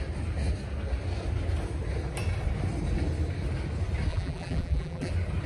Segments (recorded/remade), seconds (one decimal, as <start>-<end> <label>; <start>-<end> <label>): 0.0-4.1 recorded; 4.1-5.1 remade; 5.1-5.5 recorded